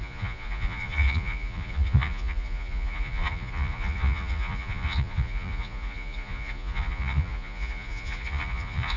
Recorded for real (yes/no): no